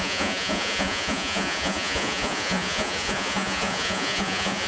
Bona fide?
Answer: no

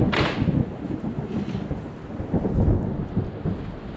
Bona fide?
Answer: yes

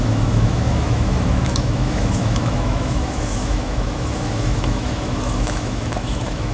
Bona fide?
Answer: no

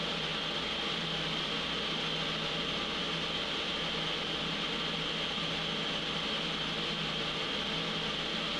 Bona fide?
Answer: yes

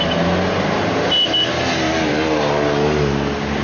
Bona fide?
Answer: yes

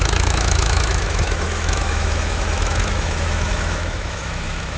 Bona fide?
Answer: no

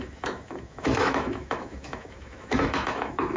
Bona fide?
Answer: no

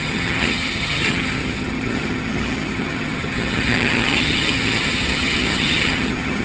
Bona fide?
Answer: no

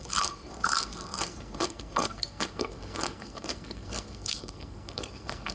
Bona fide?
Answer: no